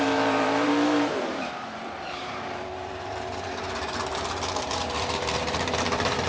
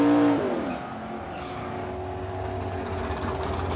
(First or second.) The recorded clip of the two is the second